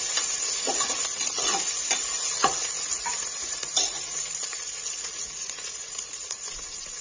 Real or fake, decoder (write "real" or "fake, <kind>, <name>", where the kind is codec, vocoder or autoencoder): fake, vocoder, Vocos